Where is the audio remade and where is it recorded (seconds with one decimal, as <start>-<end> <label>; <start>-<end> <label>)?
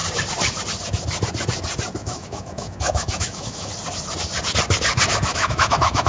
0.0-2.0 recorded; 2.0-3.7 remade; 3.7-5.3 recorded; 5.3-6.1 remade